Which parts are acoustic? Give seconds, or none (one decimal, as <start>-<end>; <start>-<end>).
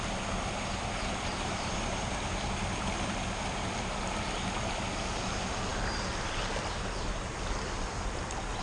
0.0-1.3; 3.2-8.6